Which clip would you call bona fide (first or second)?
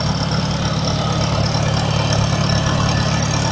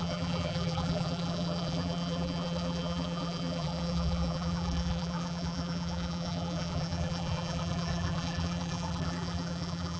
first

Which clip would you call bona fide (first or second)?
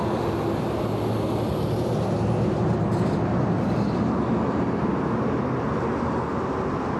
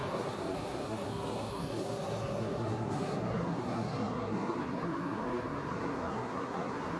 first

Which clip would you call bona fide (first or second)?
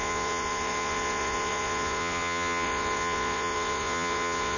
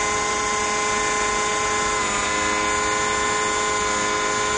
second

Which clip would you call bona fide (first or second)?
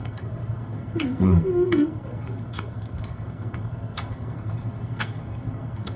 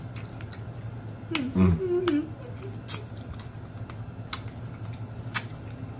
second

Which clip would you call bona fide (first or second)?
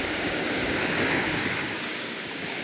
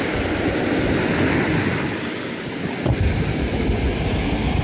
second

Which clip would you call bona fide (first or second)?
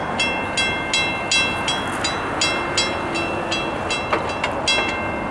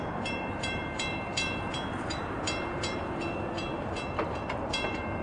first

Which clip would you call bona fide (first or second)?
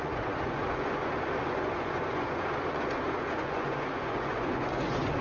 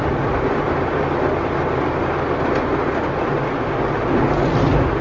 second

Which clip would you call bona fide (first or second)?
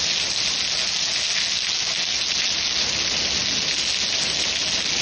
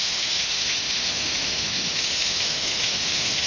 first